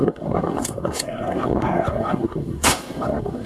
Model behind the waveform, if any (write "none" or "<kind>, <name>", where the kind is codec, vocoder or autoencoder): codec, SNAC